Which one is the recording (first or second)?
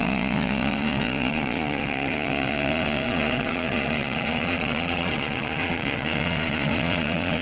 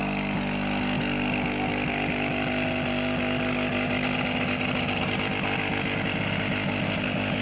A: second